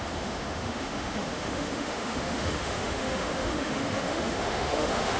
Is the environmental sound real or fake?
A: fake